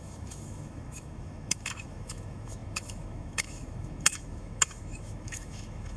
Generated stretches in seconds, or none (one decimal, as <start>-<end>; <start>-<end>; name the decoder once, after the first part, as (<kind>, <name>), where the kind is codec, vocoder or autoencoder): 0.0-6.0 (autoencoder, DAC-VAE)